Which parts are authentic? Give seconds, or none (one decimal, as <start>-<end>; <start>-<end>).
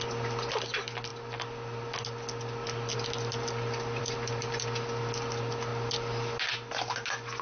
0.0-7.4